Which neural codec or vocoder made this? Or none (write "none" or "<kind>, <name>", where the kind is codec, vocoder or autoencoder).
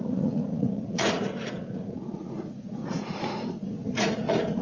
vocoder, Vocos